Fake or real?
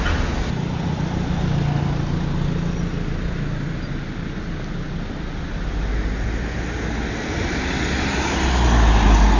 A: real